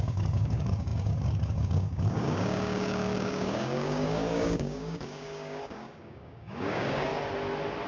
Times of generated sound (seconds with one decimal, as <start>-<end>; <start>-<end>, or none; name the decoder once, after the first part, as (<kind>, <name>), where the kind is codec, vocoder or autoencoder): 0.0-7.1 (codec, DAC)